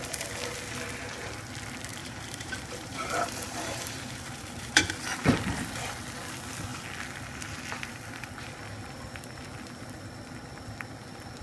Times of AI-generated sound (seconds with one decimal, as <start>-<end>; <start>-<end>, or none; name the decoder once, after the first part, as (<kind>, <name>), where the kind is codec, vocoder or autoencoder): 2.0-4.9 (vocoder, BigVGAN v2)